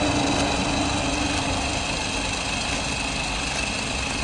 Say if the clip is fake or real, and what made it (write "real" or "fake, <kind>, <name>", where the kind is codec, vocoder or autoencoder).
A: real